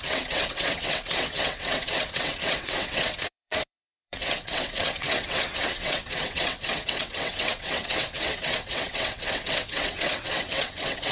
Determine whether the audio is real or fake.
fake